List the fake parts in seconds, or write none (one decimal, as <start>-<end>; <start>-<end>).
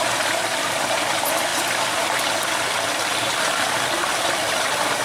none